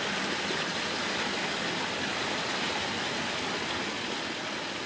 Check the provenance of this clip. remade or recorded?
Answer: remade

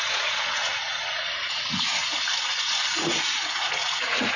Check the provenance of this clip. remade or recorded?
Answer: remade